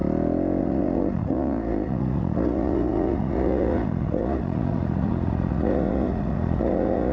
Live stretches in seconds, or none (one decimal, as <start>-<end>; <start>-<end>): 0.0-0.6